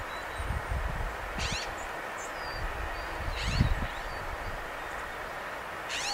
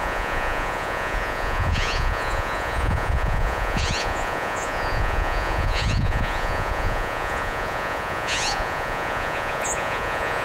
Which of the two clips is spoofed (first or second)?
second